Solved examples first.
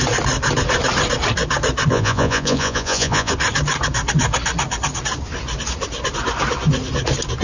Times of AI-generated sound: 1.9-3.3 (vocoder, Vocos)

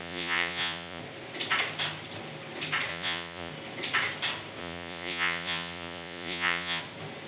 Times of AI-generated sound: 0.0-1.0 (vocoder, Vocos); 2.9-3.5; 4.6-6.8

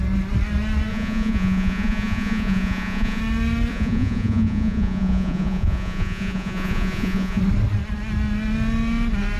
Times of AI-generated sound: 0.9-3.2 (vocoder, Vocos); 3.7-7.4

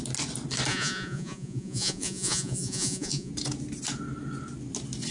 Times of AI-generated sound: 0.7-3.3 (vocoder, Vocos)

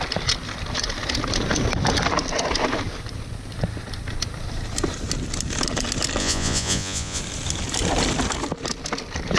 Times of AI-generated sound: 6.2-7.2 (vocoder, Vocos)

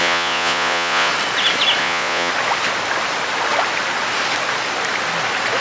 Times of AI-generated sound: 0.0-1.1 (vocoder, Vocos); 1.8-2.3

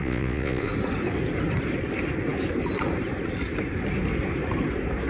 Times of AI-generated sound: 0.0-0.7 (vocoder, Vocos)